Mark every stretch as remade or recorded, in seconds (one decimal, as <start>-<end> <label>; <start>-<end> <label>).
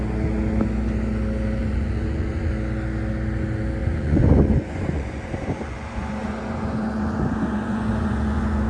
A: 0.0-1.6 recorded; 1.6-2.5 remade; 2.5-3.8 recorded; 3.8-8.7 remade